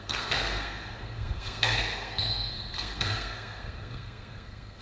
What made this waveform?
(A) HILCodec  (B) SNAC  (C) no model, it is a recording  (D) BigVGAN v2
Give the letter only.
B